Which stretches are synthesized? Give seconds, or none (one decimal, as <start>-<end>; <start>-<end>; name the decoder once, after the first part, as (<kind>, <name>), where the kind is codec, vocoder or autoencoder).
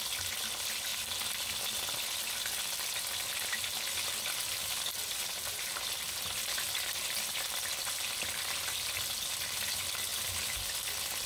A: 5.0-5.9 (vocoder, BigVGAN v2); 10.1-10.6